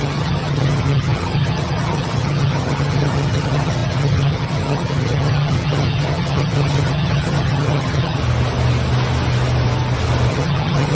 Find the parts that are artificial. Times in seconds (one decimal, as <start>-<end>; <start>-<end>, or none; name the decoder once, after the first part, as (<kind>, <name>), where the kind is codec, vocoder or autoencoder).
0.0-8.2 (vocoder, HiFi-GAN); 10.3-10.9

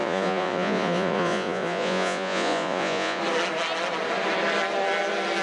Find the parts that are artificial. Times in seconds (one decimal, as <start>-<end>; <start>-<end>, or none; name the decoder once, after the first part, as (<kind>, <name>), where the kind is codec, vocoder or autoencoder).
0.0-3.2 (vocoder, Vocos)